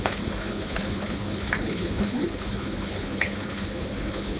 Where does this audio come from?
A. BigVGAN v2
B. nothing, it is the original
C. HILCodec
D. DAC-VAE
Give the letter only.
C